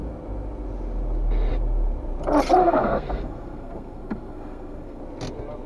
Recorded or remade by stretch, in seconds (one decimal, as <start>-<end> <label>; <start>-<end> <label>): 0.0-2.6 recorded; 2.6-5.0 remade; 5.0-5.7 recorded